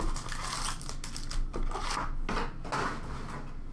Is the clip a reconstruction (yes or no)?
no